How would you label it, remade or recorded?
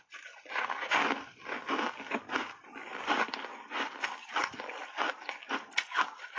recorded